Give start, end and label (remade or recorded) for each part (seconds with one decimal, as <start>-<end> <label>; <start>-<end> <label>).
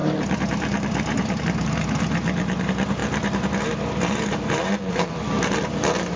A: 0.0-6.2 remade